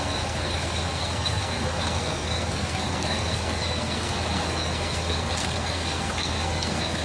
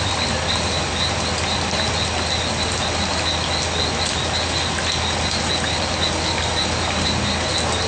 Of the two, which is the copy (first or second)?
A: first